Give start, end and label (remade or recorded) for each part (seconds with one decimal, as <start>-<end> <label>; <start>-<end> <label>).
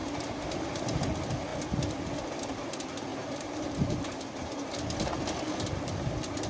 0.0-0.8 remade; 0.8-3.1 recorded; 3.1-4.7 remade; 4.7-6.5 recorded